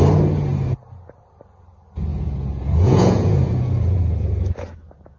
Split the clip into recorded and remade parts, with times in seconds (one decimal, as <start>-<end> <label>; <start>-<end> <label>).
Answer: 0.0-2.1 recorded; 2.1-4.0 remade; 4.0-5.2 recorded